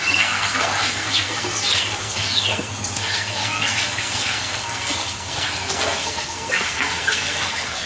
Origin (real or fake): fake